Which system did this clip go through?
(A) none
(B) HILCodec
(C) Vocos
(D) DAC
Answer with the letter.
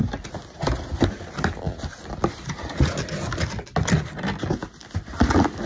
A